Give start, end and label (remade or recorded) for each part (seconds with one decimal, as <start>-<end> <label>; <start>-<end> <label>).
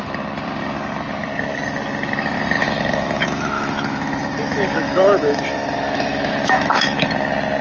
0.0-2.6 recorded; 2.6-7.1 remade; 7.1-7.6 recorded